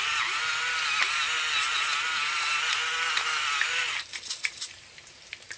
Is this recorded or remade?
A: recorded